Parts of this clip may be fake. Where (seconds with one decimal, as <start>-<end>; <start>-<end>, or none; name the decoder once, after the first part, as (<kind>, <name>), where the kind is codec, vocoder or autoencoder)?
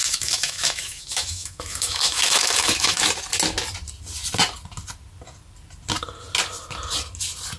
0.0-3.0 (autoencoder, DAC-VAE)